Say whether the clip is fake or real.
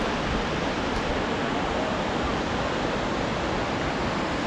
real